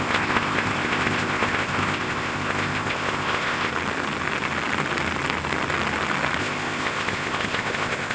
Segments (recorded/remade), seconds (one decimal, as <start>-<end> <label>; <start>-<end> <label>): 0.0-3.7 remade; 3.7-6.4 recorded; 6.4-8.1 remade